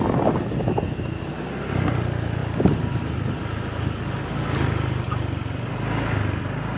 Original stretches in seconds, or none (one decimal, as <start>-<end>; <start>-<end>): 0.0-6.8